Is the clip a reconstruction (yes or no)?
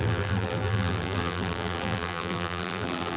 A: yes